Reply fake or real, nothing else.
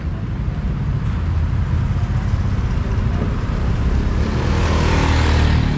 real